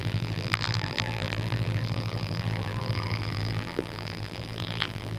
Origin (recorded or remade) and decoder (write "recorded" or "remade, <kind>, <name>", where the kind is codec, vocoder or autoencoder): remade, vocoder, BigVGAN v2